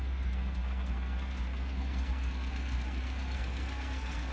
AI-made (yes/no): yes